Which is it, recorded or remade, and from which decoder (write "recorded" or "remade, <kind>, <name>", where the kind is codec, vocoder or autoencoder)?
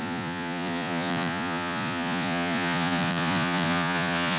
remade, vocoder, Vocos